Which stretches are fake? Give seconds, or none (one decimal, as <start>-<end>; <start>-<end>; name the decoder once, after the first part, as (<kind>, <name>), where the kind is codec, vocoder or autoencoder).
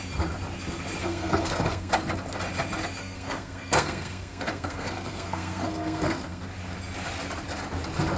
1.0-1.9 (codec, SNAC); 3.0-6.4